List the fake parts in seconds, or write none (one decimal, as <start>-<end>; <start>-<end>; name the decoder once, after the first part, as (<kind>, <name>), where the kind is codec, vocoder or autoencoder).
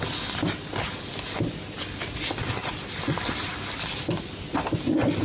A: none